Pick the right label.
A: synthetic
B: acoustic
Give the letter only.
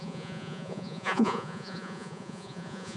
A